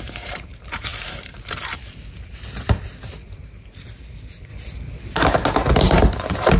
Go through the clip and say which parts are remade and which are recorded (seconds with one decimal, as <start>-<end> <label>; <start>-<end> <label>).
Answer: 0.0-4.5 remade; 4.5-5.8 recorded; 5.8-6.6 remade